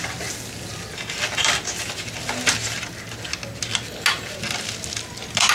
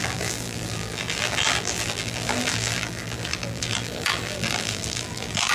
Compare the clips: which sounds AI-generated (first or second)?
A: second